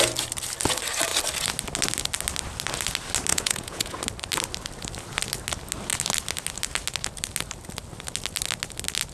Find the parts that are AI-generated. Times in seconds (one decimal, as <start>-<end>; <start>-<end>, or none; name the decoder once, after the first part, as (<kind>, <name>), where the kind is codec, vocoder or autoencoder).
3.3-4.0 (vocoder, Vocos)